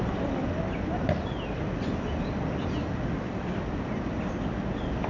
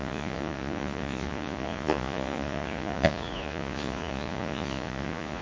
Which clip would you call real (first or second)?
first